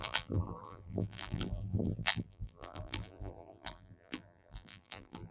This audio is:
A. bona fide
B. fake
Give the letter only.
B